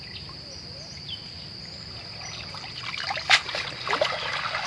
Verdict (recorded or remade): recorded